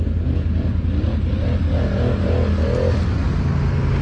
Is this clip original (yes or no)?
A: yes